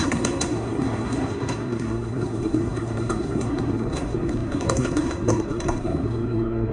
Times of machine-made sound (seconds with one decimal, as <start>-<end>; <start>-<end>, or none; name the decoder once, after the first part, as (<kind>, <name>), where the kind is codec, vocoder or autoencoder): 0.0-6.7 (codec, SNAC)